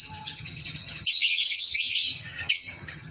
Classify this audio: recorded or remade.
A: remade